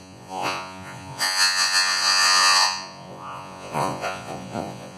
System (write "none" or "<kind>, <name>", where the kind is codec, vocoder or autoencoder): vocoder, Vocos